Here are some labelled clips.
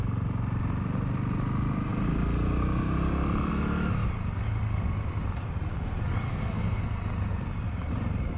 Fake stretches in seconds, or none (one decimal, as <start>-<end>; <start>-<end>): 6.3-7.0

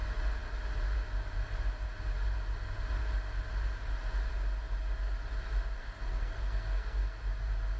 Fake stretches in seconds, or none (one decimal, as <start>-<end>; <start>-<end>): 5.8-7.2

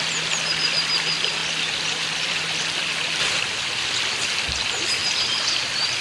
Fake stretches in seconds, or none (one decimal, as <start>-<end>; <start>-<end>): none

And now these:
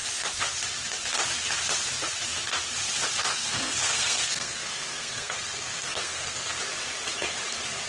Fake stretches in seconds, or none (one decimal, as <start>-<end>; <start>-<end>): 3.3-6.6

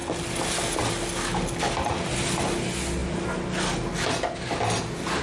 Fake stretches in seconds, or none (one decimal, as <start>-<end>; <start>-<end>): none

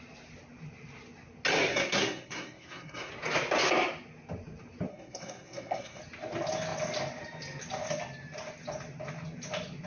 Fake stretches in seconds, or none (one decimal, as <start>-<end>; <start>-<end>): 1.7-3.1; 4.9-6.0